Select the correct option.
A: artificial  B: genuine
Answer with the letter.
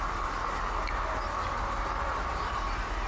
B